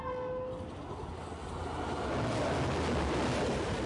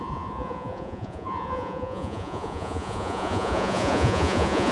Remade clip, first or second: second